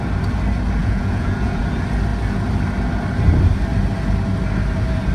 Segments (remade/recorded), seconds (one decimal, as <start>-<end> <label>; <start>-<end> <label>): 0.0-0.8 recorded; 0.8-1.6 remade; 1.6-5.1 recorded